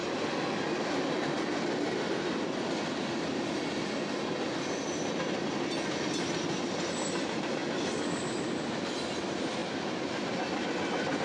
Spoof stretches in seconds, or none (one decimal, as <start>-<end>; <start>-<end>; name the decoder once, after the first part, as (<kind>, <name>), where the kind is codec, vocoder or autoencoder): none